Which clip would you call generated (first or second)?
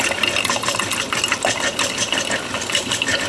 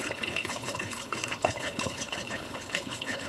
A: second